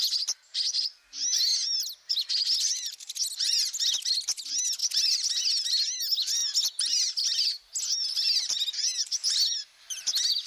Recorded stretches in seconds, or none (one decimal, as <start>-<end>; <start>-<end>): 0.0-10.5